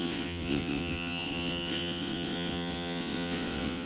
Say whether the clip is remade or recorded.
remade